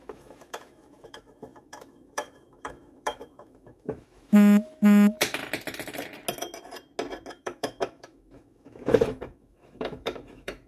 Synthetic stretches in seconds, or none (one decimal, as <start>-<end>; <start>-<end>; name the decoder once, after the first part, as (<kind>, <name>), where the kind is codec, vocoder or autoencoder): 0.0-5.4 (autoencoder, DAC-VAE); 7.3-10.7